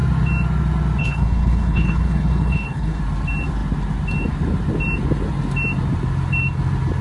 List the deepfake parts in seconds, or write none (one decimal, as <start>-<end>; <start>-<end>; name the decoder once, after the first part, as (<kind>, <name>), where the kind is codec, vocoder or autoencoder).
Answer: 1.0-3.0 (codec, HILCodec)